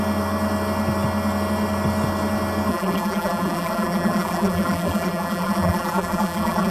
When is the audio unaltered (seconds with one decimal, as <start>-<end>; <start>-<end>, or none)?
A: 0.0-2.7